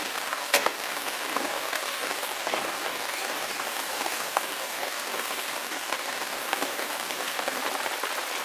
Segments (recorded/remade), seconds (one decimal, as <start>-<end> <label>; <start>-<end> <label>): 0.0-7.6 remade; 7.6-8.4 recorded